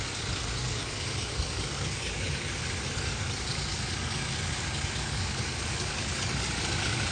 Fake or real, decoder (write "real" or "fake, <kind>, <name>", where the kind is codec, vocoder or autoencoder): fake, codec, DAC